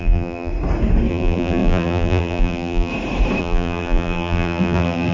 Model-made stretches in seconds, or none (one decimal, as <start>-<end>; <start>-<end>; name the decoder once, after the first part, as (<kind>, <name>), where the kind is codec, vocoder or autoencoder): 0.0-0.5 (vocoder, BigVGAN v2); 1.1-2.9; 3.4-5.1